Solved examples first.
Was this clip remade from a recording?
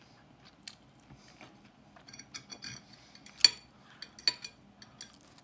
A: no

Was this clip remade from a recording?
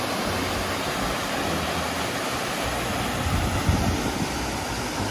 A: no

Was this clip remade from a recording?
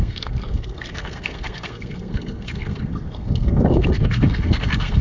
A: yes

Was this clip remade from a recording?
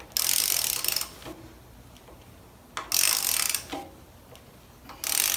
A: no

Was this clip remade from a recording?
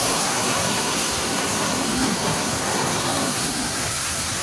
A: yes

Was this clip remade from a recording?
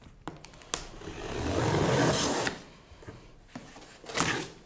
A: no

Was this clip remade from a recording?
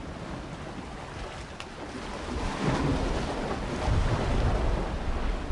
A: no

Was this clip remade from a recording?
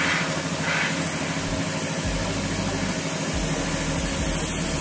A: no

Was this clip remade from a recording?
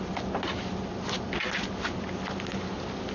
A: no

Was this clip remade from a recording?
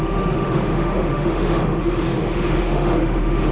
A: yes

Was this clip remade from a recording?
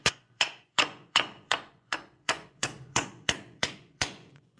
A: yes